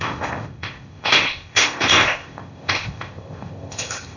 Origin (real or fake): fake